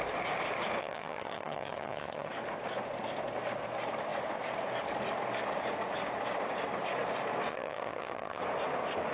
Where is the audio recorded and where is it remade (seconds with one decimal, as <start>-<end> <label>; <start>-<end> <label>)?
0.0-0.8 recorded; 0.8-2.3 remade; 2.3-7.5 recorded; 7.5-8.4 remade; 8.4-9.1 recorded